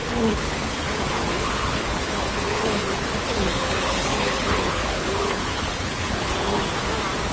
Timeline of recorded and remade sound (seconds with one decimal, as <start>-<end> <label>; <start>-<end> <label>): 0.0-6.6 remade; 6.6-7.3 recorded